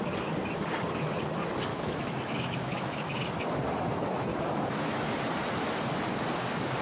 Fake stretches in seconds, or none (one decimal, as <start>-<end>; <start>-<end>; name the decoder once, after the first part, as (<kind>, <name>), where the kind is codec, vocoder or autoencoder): 1.7-3.3 (autoencoder, DAC-VAE); 4.3-5.1